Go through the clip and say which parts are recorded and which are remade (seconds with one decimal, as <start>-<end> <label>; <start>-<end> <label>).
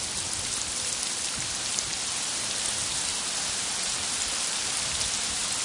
0.0-5.6 recorded